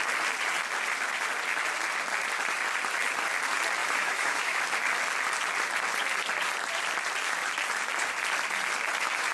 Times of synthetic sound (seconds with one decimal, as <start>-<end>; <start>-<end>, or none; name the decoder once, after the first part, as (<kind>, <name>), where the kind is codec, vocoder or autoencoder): 3.8-4.6 (autoencoder, DAC-VAE)